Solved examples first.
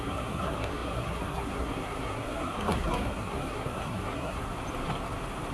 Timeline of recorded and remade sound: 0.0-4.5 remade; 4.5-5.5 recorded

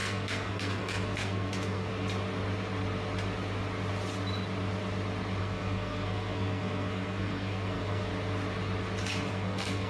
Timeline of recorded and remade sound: 0.0-1.9 remade; 1.9-5.4 recorded; 5.4-8.1 remade; 8.1-9.3 recorded; 9.3-9.9 remade